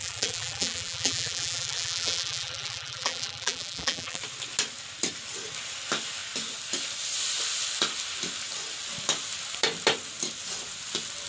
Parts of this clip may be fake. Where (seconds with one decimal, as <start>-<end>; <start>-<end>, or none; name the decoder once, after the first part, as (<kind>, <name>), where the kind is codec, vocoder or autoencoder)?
0.0-4.2 (vocoder, BigVGAN v2)